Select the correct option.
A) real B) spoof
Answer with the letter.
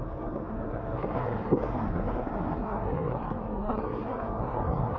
B